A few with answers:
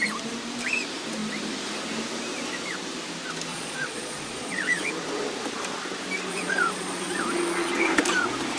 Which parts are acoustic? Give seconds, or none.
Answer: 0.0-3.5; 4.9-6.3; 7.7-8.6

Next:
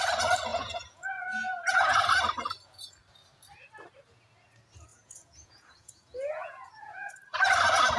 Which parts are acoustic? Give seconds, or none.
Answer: 0.0-0.5; 2.0-4.9; 7.1-8.0